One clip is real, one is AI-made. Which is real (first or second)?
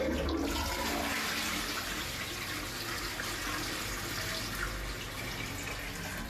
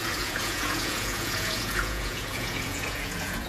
first